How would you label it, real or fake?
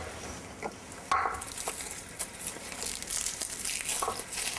real